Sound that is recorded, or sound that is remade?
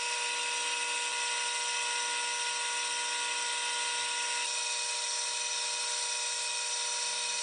recorded